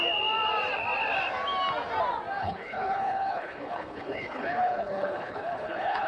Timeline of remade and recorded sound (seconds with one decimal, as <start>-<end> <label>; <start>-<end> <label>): 0.0-2.4 recorded; 2.4-6.1 remade